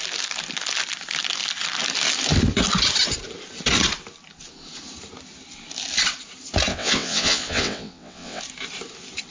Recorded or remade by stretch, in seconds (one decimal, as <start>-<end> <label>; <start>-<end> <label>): 0.0-6.7 recorded; 6.7-8.4 remade; 8.4-9.3 recorded